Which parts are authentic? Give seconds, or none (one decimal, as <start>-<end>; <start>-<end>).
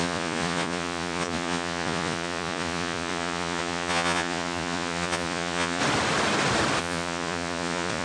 5.8-6.8